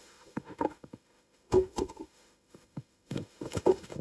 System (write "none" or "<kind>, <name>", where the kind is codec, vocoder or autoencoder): autoencoder, DAC-VAE